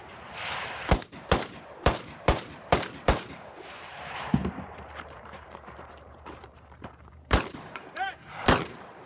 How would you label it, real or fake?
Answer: fake